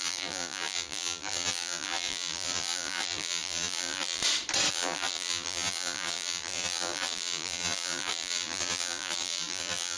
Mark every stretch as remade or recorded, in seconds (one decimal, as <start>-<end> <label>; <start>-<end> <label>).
0.0-4.2 remade; 4.2-4.7 recorded; 4.7-10.0 remade